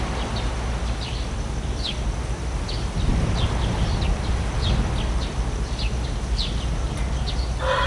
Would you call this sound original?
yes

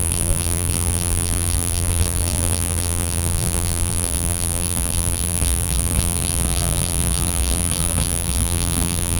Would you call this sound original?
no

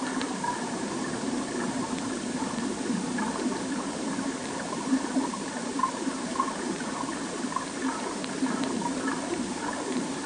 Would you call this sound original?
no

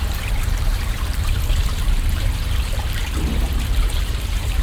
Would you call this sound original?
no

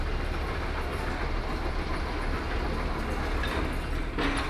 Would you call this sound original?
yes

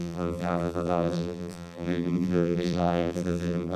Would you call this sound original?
no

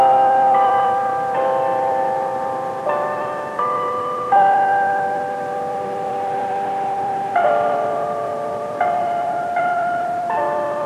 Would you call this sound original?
no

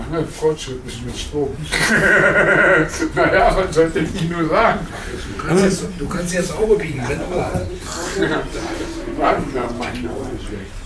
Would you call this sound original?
no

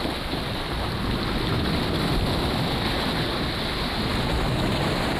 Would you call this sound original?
yes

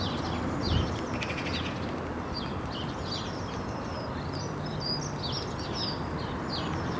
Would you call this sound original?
yes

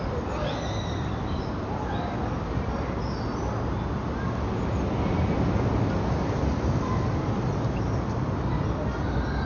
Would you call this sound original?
yes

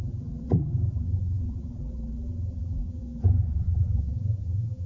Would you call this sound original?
no